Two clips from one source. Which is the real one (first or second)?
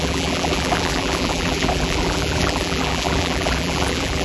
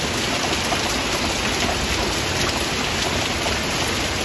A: second